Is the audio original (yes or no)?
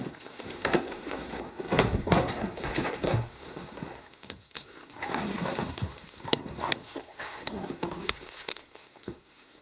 no